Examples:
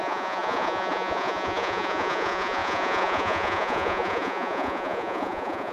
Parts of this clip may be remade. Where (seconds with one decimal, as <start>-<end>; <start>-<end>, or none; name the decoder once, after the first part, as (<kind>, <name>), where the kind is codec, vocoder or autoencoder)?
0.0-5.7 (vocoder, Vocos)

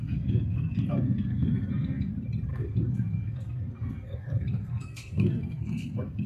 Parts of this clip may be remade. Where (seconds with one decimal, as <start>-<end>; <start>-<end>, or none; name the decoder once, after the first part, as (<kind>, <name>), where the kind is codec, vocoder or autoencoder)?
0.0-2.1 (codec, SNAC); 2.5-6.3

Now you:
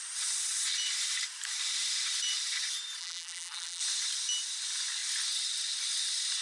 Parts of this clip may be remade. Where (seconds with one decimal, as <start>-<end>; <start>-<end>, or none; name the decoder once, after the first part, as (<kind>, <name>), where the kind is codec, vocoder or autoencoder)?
3.0-3.8 (vocoder, BigVGAN v2)

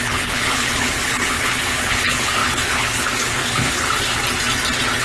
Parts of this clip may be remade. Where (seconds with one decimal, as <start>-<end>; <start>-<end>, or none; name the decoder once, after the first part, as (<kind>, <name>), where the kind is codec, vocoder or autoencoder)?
0.0-4.2 (codec, HILCodec)